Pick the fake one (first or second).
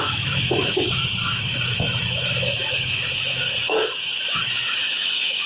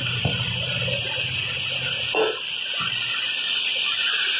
first